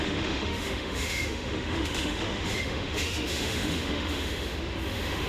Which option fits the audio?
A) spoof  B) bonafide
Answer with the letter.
A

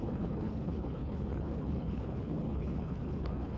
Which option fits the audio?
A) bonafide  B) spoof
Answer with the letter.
B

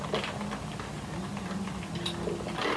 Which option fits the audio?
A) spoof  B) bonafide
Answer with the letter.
B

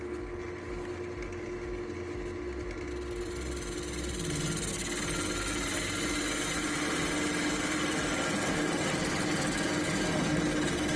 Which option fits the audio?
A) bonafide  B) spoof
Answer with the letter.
A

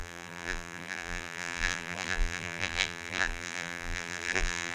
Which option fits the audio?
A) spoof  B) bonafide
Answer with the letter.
A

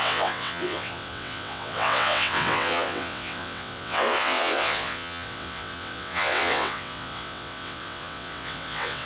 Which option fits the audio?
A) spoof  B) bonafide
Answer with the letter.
A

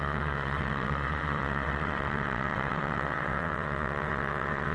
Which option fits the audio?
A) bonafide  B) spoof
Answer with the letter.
B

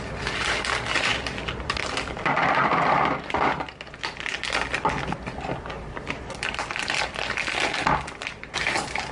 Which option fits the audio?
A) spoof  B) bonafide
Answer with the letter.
B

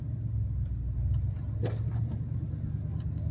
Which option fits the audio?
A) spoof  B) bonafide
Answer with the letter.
B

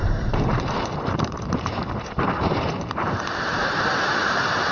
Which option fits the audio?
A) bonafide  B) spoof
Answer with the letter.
B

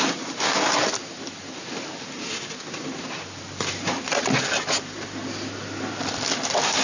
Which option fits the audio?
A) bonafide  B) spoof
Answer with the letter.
A